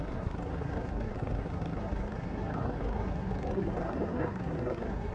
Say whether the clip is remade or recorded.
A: remade